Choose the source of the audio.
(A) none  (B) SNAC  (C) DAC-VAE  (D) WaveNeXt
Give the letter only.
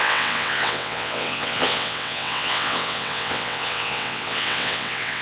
D